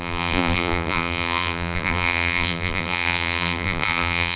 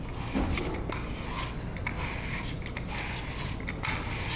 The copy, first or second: first